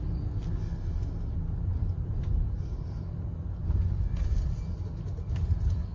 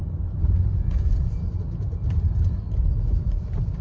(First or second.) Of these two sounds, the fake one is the second